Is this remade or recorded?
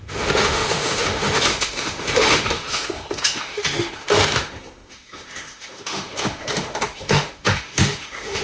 remade